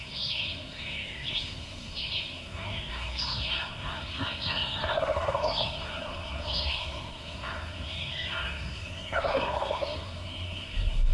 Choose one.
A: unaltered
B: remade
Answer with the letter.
B